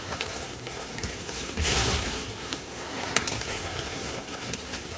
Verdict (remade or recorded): remade